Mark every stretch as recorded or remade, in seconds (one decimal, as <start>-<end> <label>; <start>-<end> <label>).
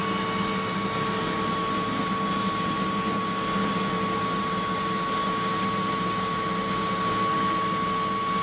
0.0-8.4 recorded